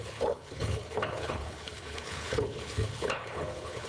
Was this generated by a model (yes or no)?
yes